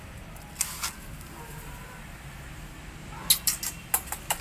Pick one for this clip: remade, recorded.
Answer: recorded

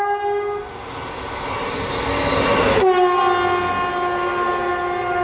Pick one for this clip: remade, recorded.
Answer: recorded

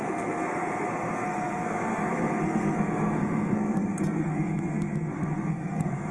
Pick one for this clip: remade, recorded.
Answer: remade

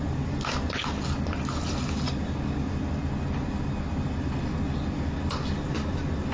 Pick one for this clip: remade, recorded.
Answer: recorded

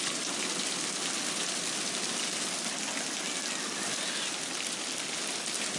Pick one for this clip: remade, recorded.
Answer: recorded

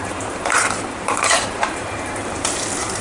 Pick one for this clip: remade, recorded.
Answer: remade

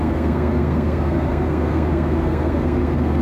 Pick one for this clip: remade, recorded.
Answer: remade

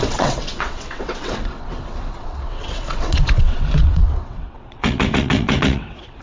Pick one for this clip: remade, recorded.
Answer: remade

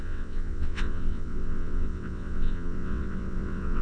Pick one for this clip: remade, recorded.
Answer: remade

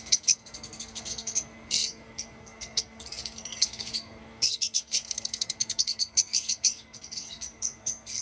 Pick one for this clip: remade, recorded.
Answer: remade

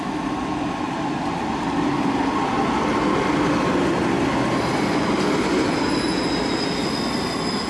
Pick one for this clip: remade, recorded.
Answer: recorded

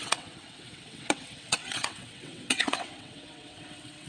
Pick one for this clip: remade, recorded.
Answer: remade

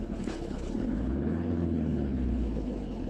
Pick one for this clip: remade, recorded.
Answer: remade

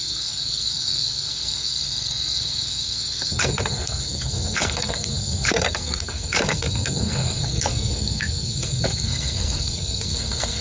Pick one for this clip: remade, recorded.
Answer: remade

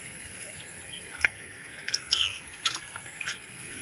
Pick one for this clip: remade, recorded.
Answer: remade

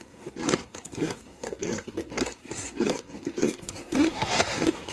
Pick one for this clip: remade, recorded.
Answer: remade